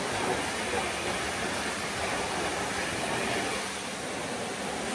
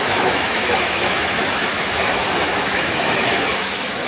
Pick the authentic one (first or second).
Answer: first